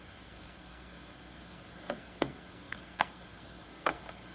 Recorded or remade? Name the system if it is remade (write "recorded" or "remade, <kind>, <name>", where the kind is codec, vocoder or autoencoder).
remade, codec, SNAC